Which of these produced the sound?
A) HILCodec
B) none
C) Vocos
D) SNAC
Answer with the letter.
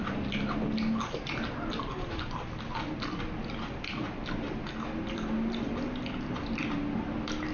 B